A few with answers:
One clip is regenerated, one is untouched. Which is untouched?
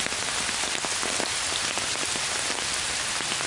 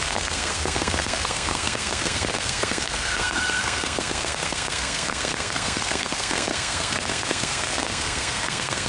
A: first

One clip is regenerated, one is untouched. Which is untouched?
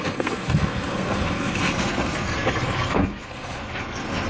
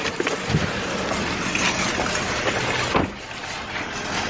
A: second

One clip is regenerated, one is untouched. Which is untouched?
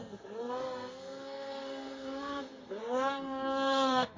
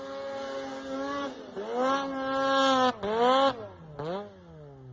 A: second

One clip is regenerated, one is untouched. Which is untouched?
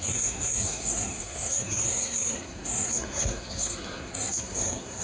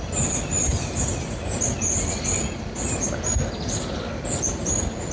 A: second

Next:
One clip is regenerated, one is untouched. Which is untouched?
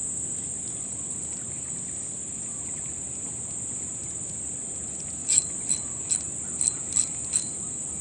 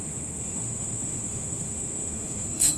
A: first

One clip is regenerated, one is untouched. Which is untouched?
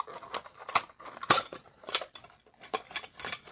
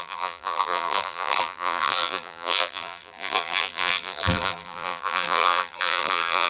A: first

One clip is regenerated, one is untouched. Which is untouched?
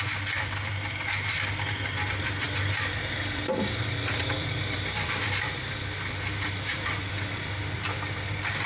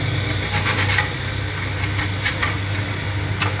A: second